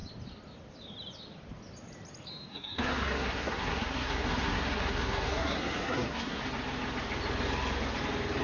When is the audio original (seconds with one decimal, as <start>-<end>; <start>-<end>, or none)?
0.0-2.5; 6.4-8.4